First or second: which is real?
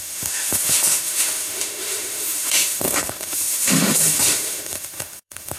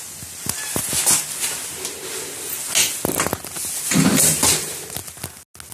second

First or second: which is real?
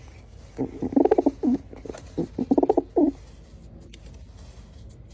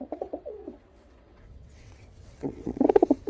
first